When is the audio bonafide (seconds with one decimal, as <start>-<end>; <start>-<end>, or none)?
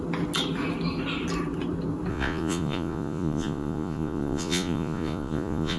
0.0-2.1